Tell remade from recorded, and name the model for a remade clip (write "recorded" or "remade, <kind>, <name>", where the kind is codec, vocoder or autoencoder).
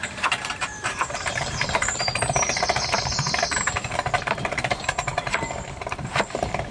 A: remade, vocoder, BigVGAN v2